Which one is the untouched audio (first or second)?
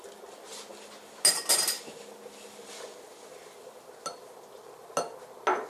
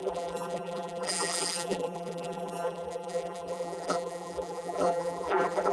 first